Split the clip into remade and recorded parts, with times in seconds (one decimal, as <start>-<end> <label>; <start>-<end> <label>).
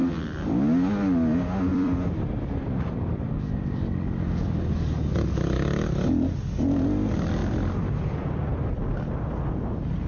0.0-0.9 remade; 0.9-1.7 recorded; 1.7-3.4 remade; 3.4-7.4 recorded; 7.4-8.2 remade; 8.2-10.1 recorded